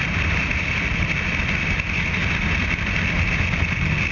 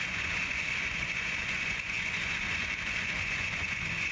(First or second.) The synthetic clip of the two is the second